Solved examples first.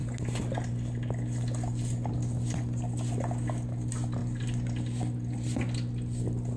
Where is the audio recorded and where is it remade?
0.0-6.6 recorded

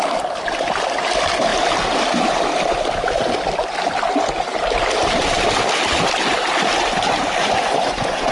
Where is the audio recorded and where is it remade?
0.0-7.4 recorded; 7.4-8.3 remade

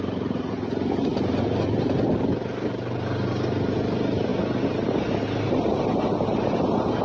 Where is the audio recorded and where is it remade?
0.0-7.0 recorded

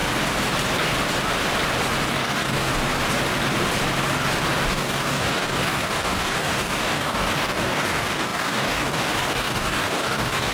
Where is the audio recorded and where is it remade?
0.0-2.1 recorded; 2.1-2.7 remade; 2.7-4.7 recorded; 4.7-10.5 remade

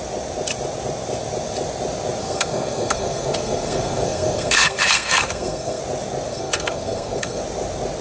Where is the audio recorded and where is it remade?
0.0-2.2 recorded; 2.2-5.8 remade; 5.8-6.3 recorded; 6.3-7.4 remade; 7.4-8.0 recorded